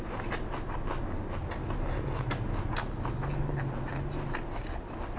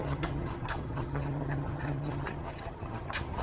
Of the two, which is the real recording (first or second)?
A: first